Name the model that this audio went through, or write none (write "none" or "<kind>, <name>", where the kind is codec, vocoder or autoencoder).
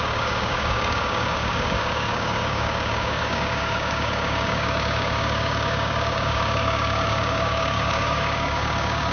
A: codec, DAC